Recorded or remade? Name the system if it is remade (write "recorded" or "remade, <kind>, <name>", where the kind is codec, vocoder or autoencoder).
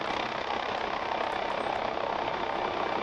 recorded